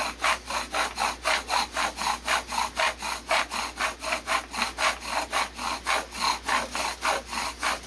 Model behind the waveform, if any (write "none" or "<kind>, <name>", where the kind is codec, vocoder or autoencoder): none